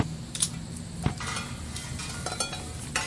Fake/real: real